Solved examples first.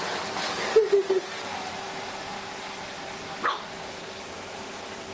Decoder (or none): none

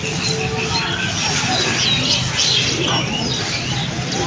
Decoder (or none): none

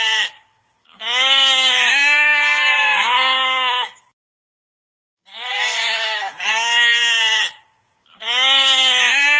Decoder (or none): codec, DAC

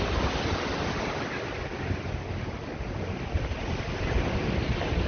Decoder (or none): none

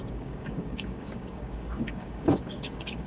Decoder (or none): codec, DAC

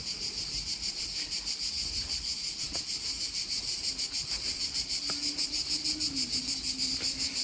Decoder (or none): none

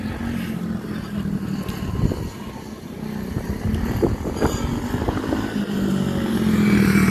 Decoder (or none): none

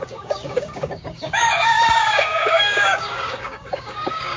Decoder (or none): codec, DAC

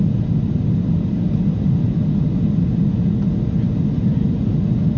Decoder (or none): none